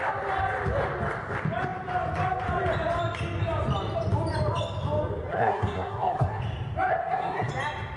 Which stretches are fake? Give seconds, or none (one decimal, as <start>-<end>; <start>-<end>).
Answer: 5.3-6.4; 6.9-7.5